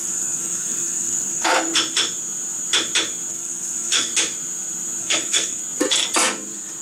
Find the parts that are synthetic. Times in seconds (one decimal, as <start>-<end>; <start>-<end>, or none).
0.0-1.7; 3.3-4.1; 5.0-5.6